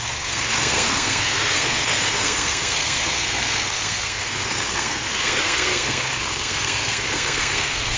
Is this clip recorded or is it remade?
remade